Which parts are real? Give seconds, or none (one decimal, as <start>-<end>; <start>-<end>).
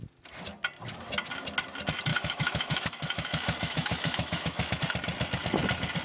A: 0.0-2.1; 4.8-6.0